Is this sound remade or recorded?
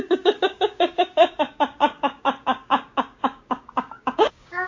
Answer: remade